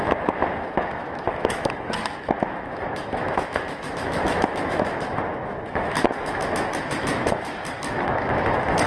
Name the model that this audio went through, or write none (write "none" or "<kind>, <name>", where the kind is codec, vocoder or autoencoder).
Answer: autoencoder, DAC-VAE